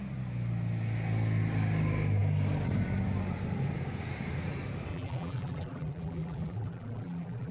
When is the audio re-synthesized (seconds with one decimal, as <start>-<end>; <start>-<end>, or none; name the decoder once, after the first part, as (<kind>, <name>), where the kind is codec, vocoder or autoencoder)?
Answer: 4.9-7.5 (vocoder, BigVGAN v2)

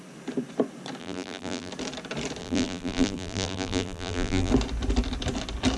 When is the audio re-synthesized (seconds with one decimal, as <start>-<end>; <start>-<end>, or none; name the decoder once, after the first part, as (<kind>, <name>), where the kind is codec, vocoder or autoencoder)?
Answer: 1.0-1.7 (vocoder, BigVGAN v2); 2.4-4.5

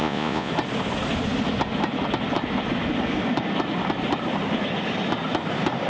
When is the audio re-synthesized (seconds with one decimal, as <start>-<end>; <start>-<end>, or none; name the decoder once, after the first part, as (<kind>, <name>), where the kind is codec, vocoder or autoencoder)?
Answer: 0.0-0.5 (vocoder, Vocos)

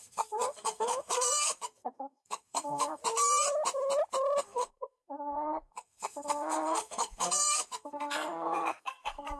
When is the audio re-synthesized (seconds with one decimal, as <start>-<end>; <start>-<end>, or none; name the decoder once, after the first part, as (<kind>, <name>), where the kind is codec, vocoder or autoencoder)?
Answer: 0.0-3.0 (codec, SNAC); 4.4-9.4

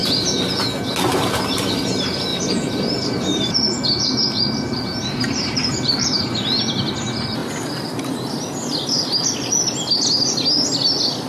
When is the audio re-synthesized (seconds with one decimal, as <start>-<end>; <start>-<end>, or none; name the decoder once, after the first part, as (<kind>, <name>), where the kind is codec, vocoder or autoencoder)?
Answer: 2.3-6.2 (vocoder, BigVGAN v2)